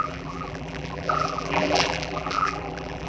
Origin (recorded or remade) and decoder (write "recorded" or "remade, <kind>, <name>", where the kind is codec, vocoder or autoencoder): remade, vocoder, BigVGAN v2